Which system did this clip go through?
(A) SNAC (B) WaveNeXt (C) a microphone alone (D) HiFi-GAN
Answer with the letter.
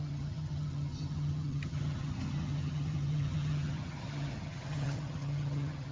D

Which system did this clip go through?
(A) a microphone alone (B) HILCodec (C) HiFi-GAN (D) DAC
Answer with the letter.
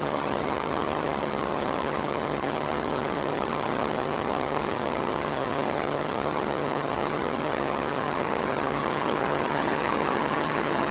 C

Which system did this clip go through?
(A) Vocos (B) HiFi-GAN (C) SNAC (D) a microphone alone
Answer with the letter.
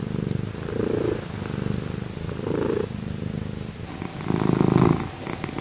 D